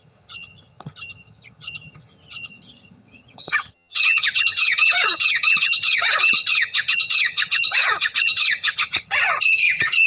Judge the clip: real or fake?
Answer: fake